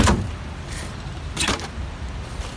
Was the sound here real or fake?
fake